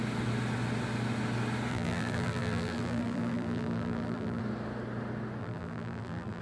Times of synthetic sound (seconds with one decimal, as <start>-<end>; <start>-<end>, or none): 1.7-4.4; 5.4-6.4